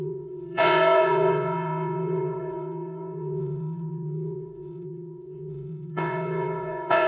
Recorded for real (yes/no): no